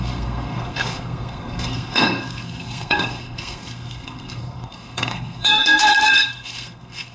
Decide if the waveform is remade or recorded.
remade